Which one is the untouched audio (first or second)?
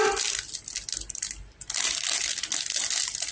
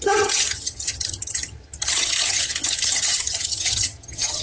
first